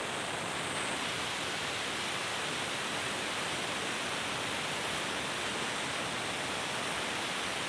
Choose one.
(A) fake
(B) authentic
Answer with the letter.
B